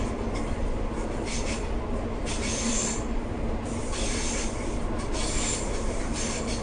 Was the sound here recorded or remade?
remade